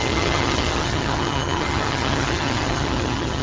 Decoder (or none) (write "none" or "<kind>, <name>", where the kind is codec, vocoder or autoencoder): vocoder, HiFi-GAN